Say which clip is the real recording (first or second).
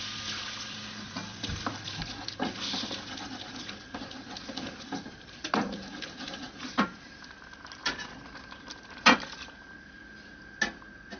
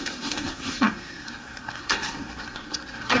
first